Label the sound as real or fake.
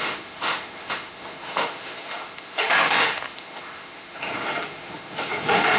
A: fake